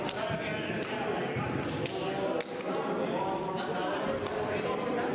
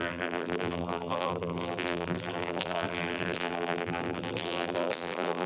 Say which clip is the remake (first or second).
second